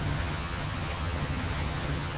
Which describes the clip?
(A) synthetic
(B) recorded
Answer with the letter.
A